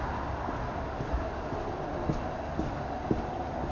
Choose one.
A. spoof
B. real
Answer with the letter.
B